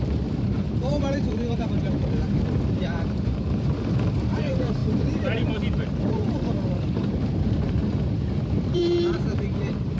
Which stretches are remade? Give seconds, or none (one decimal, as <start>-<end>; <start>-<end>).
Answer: 0.0-7.8; 8.6-10.0